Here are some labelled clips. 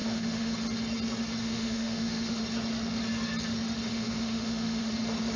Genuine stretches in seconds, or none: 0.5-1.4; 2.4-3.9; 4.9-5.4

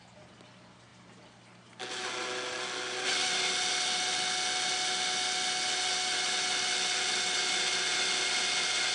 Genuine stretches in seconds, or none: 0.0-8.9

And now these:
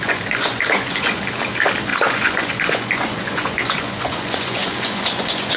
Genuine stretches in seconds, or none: 1.2-1.9